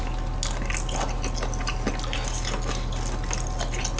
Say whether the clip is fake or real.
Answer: real